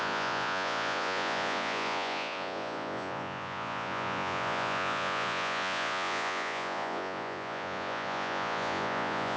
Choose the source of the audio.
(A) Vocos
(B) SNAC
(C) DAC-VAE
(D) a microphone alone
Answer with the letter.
A